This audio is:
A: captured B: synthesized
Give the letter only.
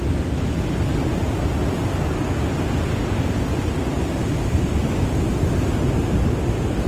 A